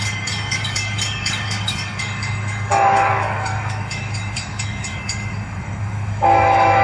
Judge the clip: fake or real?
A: fake